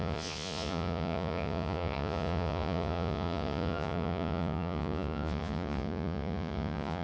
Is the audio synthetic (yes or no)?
yes